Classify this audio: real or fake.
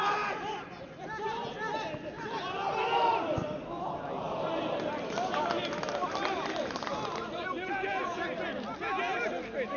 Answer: real